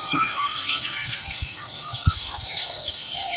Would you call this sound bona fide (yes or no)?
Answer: no